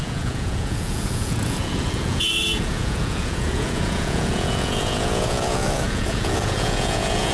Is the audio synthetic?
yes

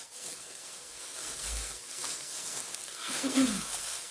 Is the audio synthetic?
yes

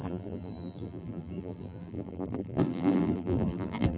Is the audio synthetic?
yes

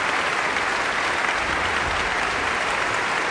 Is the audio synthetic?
no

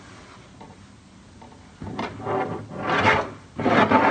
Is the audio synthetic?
no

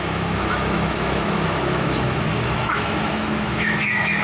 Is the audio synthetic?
yes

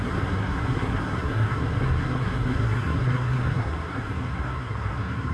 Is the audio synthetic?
yes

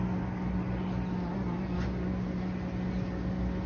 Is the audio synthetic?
no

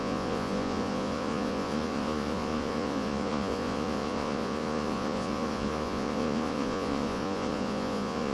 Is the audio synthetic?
yes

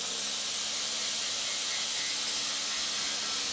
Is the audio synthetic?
no